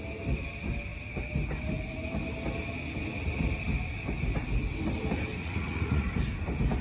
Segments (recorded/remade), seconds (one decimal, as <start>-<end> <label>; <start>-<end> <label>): 0.0-5.4 recorded; 5.4-6.2 remade; 6.2-6.8 recorded